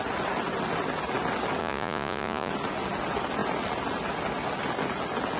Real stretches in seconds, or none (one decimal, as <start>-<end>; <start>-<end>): 0.0-1.6; 2.5-5.4